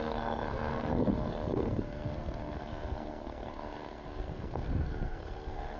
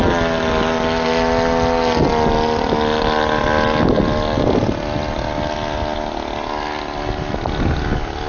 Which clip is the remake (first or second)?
first